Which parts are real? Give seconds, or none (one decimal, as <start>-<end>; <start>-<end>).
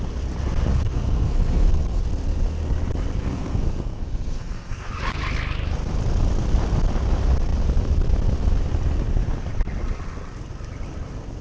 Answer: 0.0-0.7; 2.0-3.2; 4.9-11.4